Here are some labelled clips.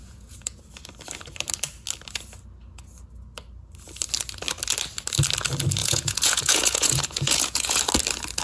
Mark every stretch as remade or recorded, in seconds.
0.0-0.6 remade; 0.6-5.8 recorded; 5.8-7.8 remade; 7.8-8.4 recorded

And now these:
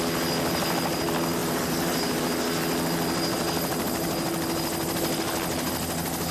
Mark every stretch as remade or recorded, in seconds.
0.0-1.4 recorded; 1.4-2.2 remade; 2.2-6.3 recorded

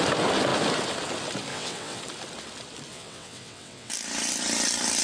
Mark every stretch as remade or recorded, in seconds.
0.0-1.5 recorded; 1.5-2.0 remade; 2.0-2.9 recorded; 2.9-3.9 remade; 3.9-5.0 recorded